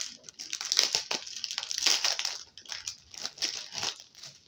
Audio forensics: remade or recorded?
recorded